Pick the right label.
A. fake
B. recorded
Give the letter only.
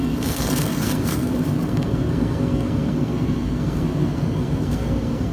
A